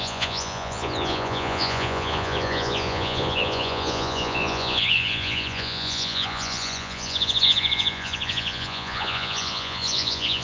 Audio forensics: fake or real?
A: fake